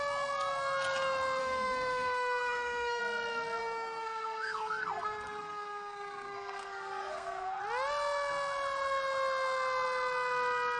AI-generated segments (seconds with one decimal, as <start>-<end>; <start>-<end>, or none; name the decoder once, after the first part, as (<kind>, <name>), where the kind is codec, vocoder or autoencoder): 1.4-3.0 (codec, SNAC); 3.6-7.6